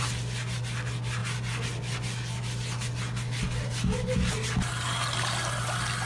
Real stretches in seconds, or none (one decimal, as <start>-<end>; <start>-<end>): 0.0-6.1